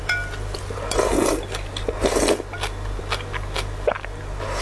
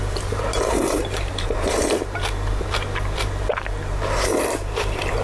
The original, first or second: first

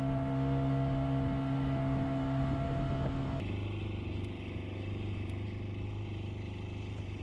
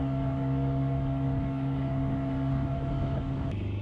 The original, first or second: first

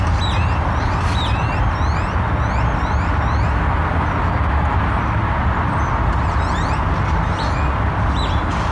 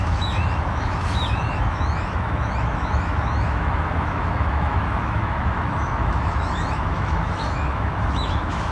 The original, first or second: first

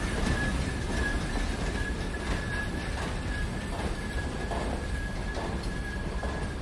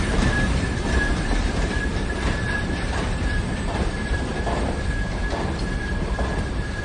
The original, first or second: first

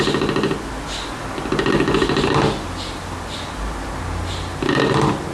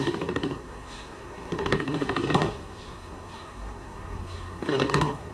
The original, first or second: first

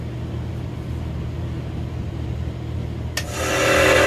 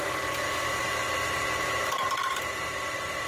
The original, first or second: first